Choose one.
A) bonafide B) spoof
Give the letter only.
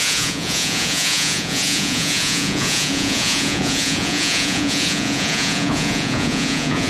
B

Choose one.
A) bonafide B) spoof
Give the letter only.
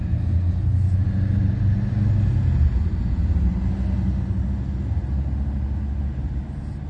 A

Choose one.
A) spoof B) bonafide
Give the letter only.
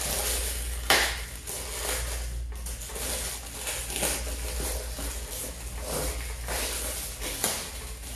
B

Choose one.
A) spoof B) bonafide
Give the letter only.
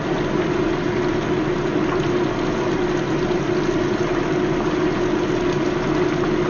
B